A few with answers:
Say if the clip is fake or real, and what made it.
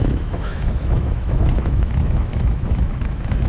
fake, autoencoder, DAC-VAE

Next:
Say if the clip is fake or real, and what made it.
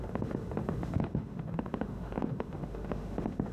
fake, autoencoder, DAC-VAE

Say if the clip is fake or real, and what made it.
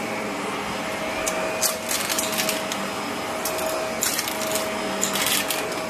real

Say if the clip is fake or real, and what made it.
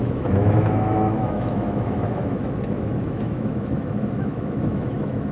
fake, autoencoder, DAC-VAE